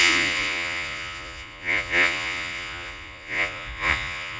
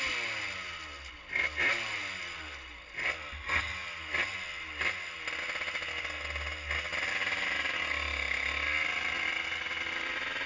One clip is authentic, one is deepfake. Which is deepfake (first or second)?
first